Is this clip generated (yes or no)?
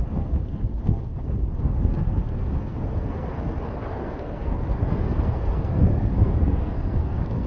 yes